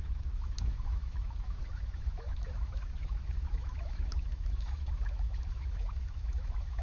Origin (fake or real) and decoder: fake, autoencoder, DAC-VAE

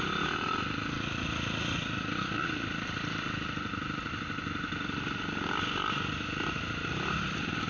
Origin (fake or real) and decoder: real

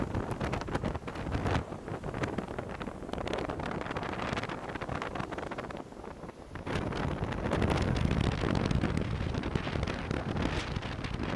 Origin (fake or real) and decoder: real